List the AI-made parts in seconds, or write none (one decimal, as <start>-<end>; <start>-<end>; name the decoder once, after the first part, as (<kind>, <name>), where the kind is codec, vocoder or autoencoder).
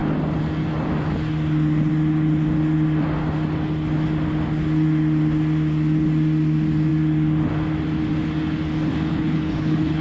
9.1-10.0 (codec, HILCodec)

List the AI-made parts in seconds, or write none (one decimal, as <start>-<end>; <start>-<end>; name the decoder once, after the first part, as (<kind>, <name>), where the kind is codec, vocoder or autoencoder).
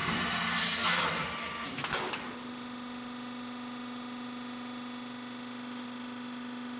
0.0-1.0 (vocoder, BigVGAN v2)